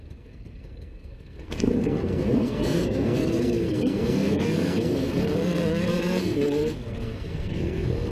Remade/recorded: remade